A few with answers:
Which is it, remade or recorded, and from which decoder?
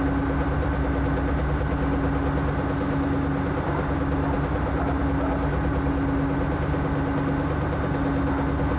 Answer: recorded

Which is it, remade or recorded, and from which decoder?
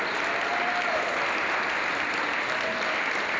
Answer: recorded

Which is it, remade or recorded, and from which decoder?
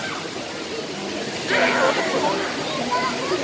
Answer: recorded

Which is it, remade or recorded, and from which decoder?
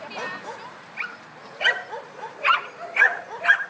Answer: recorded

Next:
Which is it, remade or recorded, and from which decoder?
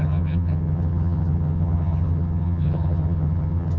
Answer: remade, vocoder, HiFi-GAN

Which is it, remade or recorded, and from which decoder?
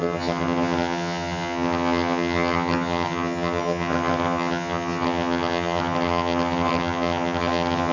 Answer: remade, vocoder, HiFi-GAN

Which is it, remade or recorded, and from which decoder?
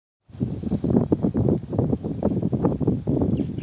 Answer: recorded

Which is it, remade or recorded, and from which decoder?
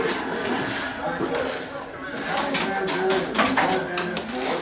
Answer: recorded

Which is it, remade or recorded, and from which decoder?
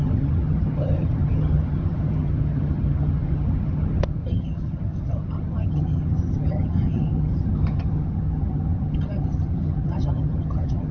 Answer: remade, vocoder, HiFi-GAN